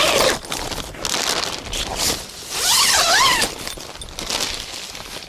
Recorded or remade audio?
recorded